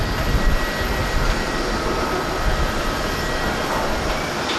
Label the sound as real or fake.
real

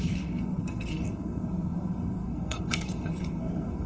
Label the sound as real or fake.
fake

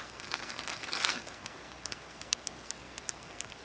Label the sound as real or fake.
fake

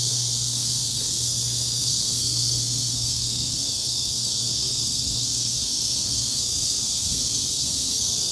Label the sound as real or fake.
fake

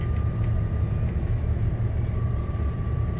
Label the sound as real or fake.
real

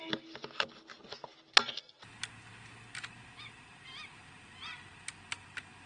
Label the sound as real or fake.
real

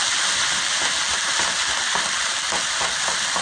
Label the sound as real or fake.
real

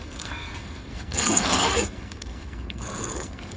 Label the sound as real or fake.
fake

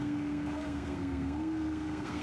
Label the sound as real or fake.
fake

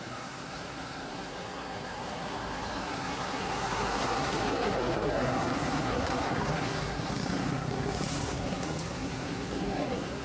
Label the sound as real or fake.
fake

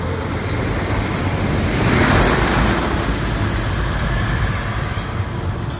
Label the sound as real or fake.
real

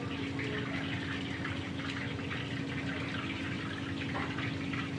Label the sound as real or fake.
real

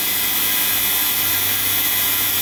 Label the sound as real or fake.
real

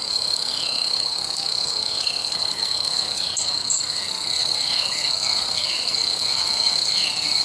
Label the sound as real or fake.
fake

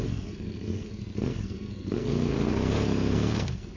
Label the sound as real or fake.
fake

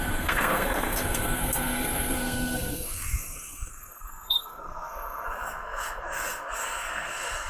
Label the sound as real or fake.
fake